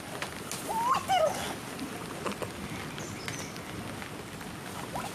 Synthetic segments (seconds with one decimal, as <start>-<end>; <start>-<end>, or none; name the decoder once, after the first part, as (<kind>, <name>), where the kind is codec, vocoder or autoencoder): none